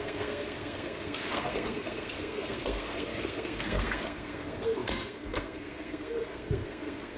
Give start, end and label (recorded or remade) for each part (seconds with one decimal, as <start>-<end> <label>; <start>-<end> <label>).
0.0-7.2 remade